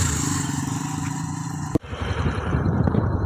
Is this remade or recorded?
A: remade